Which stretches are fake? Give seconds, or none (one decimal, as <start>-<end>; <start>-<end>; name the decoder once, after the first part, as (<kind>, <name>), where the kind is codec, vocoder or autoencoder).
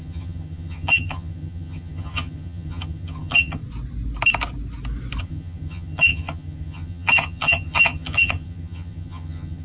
0.0-3.6 (vocoder, HiFi-GAN); 5.2-9.6